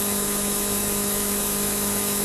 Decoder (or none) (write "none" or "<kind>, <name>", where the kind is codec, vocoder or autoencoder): autoencoder, DAC-VAE